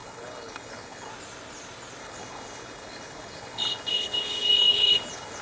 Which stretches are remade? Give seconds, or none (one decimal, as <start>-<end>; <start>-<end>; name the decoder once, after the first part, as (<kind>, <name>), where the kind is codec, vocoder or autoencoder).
0.0-1.1 (codec, HILCodec); 2.0-5.4